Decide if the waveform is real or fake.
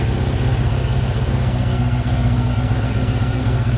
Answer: fake